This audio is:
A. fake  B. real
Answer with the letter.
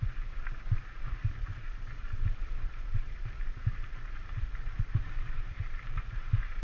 A